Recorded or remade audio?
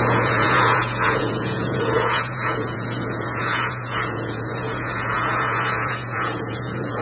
remade